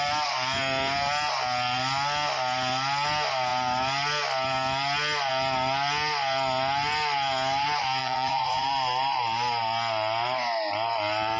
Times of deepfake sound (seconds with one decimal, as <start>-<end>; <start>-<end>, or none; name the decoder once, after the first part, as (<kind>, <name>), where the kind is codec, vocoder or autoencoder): 8.0-8.7 (vocoder, Vocos)